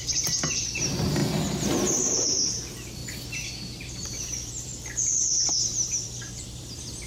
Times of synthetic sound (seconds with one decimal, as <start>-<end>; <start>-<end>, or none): 0.0-1.2; 1.9-3.0; 3.9-4.7; 5.3-7.1